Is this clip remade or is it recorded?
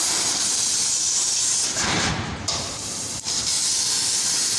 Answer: remade